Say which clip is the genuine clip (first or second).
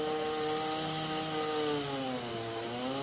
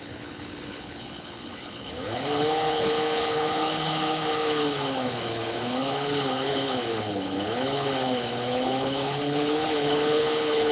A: first